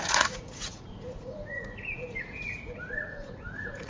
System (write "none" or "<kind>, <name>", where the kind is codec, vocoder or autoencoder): vocoder, Vocos